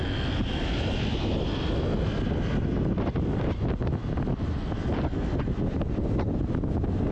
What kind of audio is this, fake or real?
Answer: real